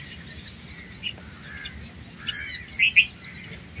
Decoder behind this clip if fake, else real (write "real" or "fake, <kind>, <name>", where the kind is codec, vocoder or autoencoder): real